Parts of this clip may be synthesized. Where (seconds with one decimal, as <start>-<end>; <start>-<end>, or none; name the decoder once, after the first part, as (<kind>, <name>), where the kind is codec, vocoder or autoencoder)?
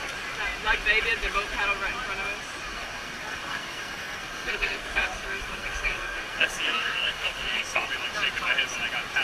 2.7-7.9 (codec, SNAC)